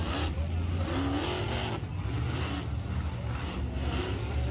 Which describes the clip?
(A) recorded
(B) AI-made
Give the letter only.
A